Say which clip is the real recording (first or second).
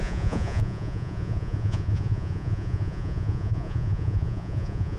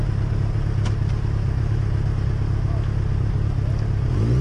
second